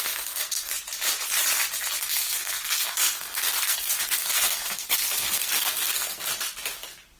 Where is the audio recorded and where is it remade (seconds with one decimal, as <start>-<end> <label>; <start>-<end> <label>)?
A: 0.0-0.7 remade; 0.7-2.0 recorded; 2.0-6.2 remade; 6.2-7.2 recorded